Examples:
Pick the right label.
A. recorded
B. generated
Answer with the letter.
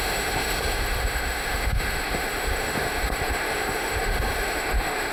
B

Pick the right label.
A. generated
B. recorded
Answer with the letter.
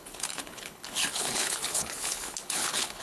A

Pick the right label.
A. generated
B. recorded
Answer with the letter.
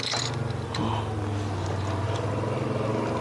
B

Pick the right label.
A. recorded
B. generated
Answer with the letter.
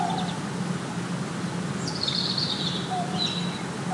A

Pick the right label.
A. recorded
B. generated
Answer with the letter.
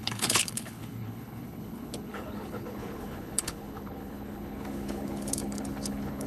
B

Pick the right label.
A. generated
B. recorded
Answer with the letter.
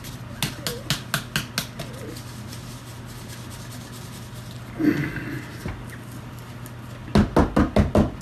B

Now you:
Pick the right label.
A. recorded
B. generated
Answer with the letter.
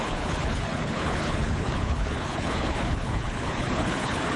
B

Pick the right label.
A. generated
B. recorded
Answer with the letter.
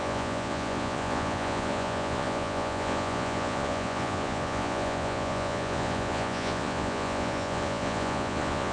A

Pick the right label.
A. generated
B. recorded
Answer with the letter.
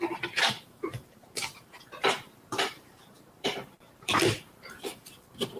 A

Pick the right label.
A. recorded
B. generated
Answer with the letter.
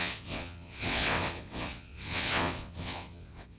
B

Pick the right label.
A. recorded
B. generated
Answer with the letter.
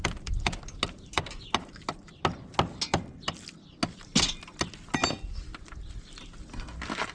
A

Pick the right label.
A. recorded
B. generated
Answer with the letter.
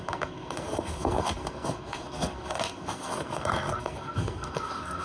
B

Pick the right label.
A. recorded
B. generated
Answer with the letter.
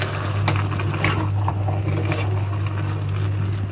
A